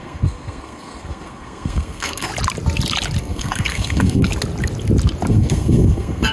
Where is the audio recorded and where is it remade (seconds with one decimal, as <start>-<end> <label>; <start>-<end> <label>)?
0.0-2.3 remade; 2.3-3.2 recorded; 3.2-4.3 remade; 4.3-5.3 recorded; 5.3-6.3 remade